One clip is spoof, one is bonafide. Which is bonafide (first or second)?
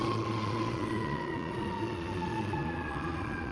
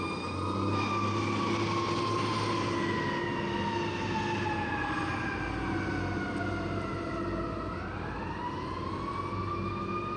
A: second